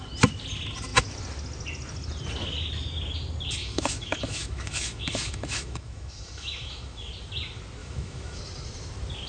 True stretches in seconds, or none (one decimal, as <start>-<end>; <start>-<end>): 0.0-3.6; 7.1-7.8; 8.4-9.3